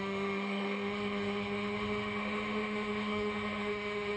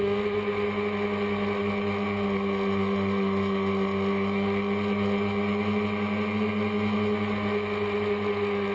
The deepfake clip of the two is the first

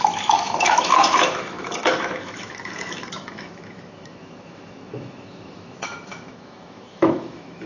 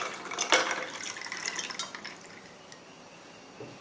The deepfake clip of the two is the first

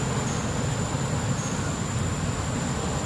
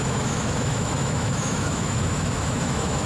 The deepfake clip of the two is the second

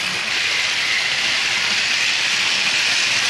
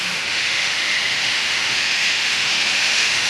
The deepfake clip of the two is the second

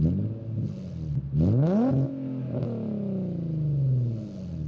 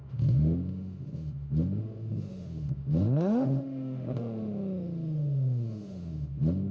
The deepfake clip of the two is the second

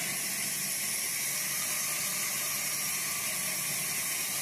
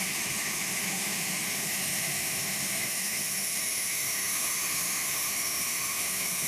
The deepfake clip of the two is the second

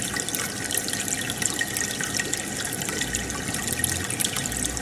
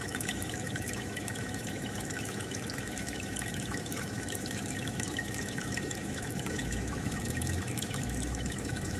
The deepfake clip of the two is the second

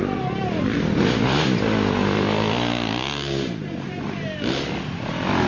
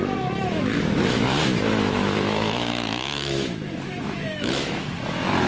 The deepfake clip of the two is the second